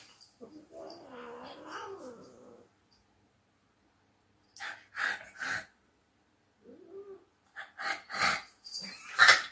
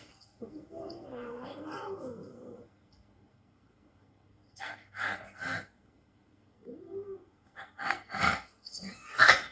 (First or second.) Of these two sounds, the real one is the first